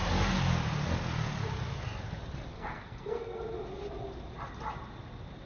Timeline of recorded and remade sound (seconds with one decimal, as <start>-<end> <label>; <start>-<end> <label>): 0.0-2.5 recorded; 2.5-3.4 remade; 3.4-5.5 recorded